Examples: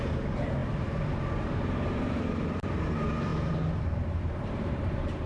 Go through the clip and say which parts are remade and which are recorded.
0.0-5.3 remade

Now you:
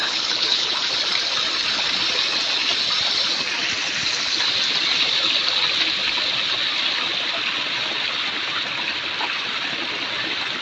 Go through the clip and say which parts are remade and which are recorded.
0.0-0.9 remade; 0.9-10.6 recorded

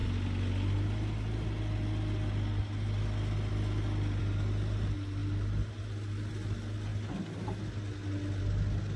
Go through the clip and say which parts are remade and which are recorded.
0.0-9.0 recorded

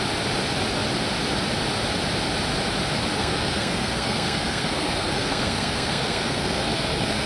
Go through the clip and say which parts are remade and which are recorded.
0.0-3.2 recorded; 3.2-7.3 remade

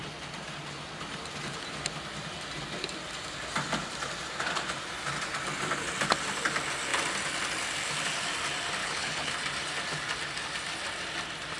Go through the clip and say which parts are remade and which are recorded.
0.0-8.8 recorded; 8.8-9.3 remade; 9.3-11.6 recorded

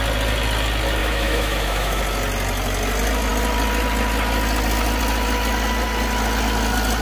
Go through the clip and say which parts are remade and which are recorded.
0.0-1.0 recorded; 1.0-2.0 remade; 2.0-7.0 recorded

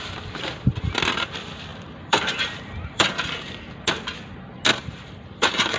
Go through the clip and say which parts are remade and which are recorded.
0.0-1.7 recorded; 1.7-3.1 remade; 3.1-4.7 recorded; 4.7-5.8 remade